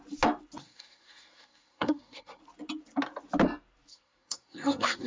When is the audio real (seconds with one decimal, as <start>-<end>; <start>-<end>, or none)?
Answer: 0.0-0.6; 2.4-3.9